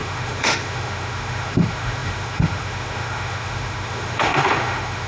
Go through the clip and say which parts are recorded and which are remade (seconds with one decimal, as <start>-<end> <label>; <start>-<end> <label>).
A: 0.0-5.1 remade